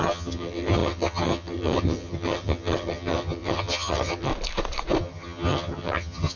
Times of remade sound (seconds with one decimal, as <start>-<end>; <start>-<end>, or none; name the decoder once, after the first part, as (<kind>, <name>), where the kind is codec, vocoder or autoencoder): 0.0-4.3 (vocoder, HiFi-GAN); 5.0-6.4